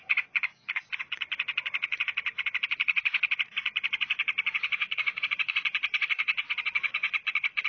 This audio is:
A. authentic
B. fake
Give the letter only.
B